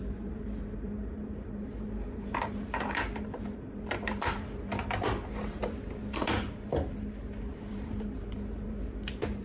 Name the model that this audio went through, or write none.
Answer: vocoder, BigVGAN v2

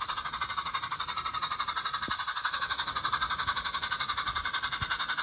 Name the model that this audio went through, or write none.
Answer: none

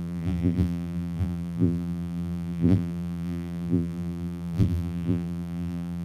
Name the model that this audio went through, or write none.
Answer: vocoder, BigVGAN v2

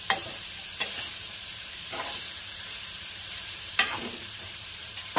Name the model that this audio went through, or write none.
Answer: vocoder, BigVGAN v2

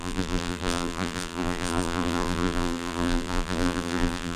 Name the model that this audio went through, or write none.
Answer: vocoder, BigVGAN v2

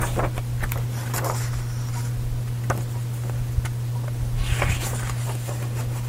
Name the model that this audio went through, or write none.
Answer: none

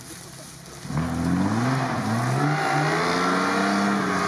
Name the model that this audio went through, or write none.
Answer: none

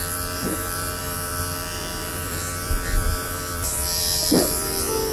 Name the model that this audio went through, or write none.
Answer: vocoder, BigVGAN v2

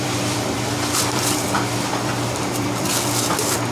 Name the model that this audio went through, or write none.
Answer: vocoder, BigVGAN v2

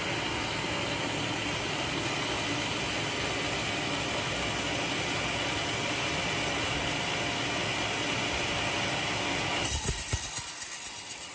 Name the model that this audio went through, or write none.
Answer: none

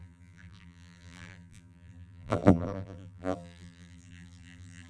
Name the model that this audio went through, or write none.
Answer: vocoder, BigVGAN v2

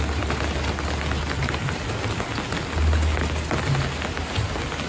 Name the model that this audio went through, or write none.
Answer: none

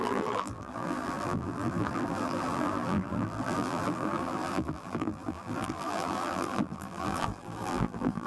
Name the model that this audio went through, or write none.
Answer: vocoder, BigVGAN v2